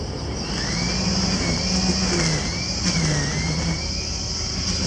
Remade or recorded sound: recorded